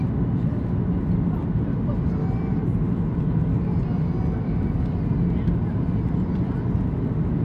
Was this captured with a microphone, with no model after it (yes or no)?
yes